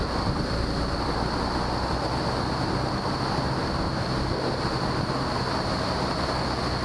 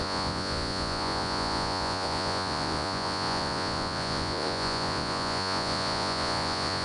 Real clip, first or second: first